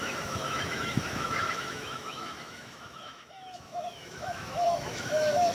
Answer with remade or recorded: remade